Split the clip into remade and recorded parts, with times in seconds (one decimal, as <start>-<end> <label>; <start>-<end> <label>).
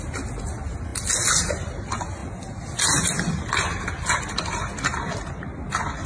0.0-6.1 recorded